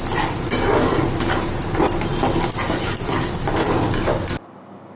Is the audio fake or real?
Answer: real